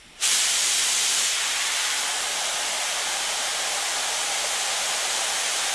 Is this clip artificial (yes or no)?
yes